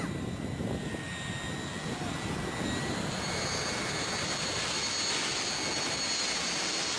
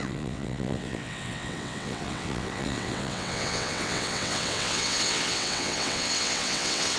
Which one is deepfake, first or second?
second